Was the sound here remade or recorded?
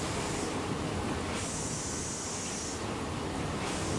recorded